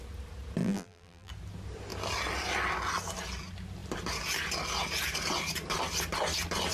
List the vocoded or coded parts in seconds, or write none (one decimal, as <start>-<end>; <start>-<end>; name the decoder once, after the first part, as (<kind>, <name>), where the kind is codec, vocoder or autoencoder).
0.6-1.3 (vocoder, BigVGAN v2)